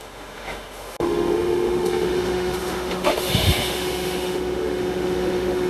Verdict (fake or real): fake